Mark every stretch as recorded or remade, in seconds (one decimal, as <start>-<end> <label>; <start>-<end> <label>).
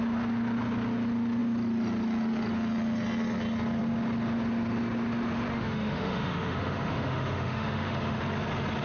0.0-5.5 recorded; 5.5-8.2 remade; 8.2-8.8 recorded